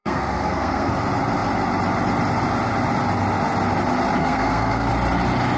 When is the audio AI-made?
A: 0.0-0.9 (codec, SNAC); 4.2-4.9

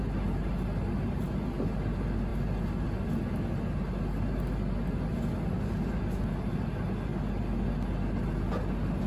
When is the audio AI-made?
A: none

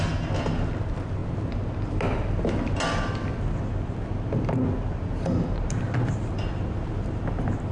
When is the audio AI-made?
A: none

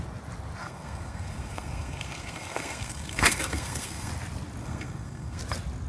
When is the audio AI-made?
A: 0.6-4.1 (codec, SNAC); 4.6-5.4

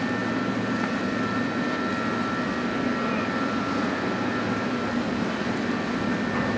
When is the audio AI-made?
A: none

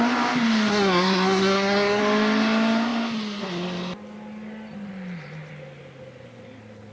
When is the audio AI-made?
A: 0.7-2.0 (codec, SNAC)

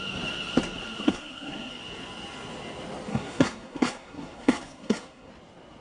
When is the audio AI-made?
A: 1.0-1.7 (codec, SNAC); 3.1-5.3